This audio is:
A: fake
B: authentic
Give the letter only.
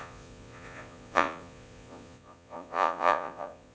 A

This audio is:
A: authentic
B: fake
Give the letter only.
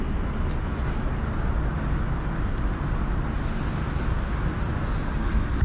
A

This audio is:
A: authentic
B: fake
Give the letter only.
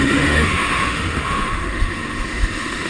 B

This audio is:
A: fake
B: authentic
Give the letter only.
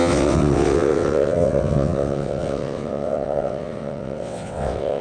A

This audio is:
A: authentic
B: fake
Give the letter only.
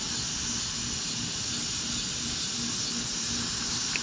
A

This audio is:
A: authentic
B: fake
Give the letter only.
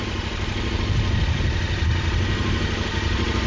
A